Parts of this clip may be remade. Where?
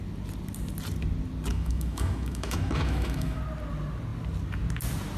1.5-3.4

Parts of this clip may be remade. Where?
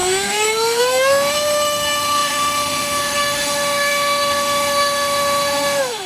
0.0-6.1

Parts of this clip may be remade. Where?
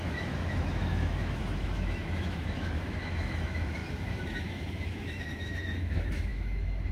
0.0-6.9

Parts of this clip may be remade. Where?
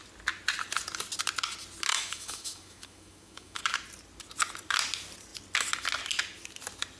1.9-3.6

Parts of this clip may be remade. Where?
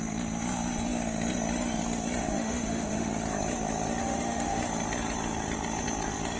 2.2-3.1; 4.0-4.6